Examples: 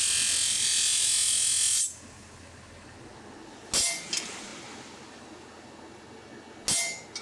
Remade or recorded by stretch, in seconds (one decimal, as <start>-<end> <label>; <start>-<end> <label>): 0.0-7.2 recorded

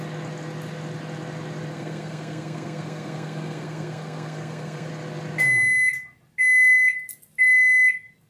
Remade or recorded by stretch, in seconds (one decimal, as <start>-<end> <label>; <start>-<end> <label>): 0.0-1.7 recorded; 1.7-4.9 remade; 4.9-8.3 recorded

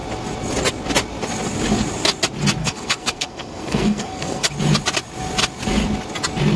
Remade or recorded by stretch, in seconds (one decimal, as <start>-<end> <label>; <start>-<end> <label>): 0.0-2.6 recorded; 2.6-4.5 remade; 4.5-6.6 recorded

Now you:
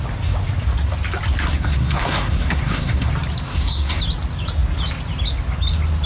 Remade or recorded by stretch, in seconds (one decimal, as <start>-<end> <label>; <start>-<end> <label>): 0.0-1.5 recorded; 1.5-3.1 remade; 3.1-3.5 recorded; 3.5-4.0 remade; 4.0-6.1 recorded

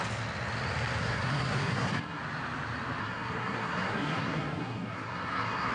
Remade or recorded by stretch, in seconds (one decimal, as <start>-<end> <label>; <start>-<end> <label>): 0.0-1.0 recorded; 1.0-2.2 remade; 2.2-3.0 recorded; 3.0-5.7 remade

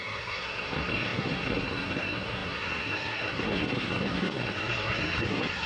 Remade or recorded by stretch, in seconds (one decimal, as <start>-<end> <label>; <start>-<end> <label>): 0.0-5.7 remade

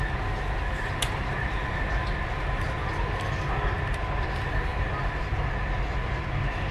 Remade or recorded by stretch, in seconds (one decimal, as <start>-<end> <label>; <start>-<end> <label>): 0.0-6.7 recorded

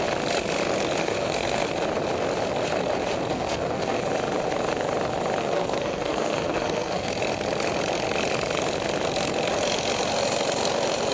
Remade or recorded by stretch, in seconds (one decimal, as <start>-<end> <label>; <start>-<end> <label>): 0.0-1.0 recorded; 1.0-1.7 remade; 1.7-3.3 recorded; 3.3-4.0 remade; 4.0-5.4 recorded; 5.4-7.1 remade; 7.1-11.1 recorded